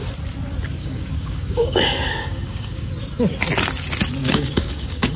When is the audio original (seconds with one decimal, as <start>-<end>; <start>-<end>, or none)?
0.0-0.8; 2.9-4.2